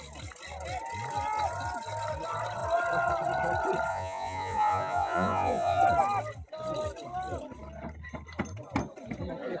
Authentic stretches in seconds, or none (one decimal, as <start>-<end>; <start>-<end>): 0.0-3.9; 5.8-9.6